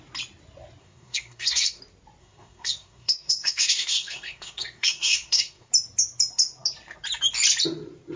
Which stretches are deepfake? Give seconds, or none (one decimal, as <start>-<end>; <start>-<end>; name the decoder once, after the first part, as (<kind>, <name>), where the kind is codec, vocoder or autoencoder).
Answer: 0.8-1.8 (codec, SNAC); 2.2-5.7